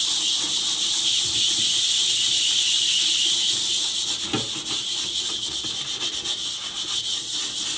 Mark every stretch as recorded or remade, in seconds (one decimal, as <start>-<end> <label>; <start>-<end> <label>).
0.0-7.8 recorded